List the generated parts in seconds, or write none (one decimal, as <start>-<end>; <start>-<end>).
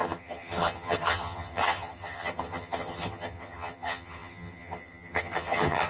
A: 0.0-5.9